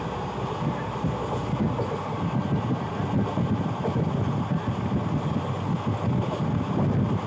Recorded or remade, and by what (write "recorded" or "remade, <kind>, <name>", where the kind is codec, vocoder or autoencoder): recorded